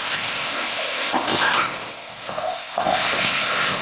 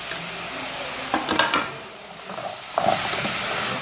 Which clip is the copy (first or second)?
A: first